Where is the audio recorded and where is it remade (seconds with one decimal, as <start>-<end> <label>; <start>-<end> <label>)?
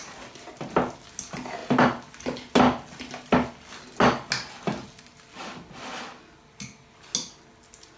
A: 0.0-8.0 recorded